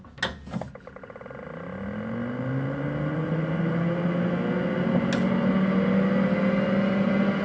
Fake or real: real